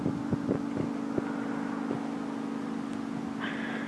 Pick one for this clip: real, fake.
real